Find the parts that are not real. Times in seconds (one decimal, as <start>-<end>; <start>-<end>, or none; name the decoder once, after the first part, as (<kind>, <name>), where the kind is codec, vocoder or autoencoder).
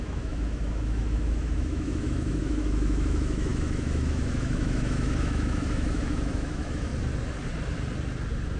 0.0-6.9 (autoencoder, DAC-VAE)